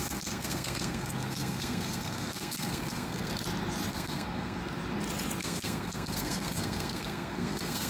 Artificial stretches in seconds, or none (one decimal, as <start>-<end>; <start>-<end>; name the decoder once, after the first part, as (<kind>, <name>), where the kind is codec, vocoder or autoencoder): 0.0-3.3 (codec, SNAC); 3.9-4.6; 5.4-7.9